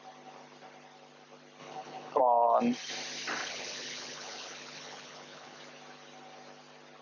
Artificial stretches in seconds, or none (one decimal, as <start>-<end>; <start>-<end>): 1.6-2.2; 3.4-5.6